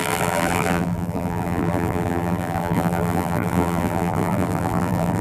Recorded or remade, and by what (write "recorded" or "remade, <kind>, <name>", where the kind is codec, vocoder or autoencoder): remade, vocoder, BigVGAN v2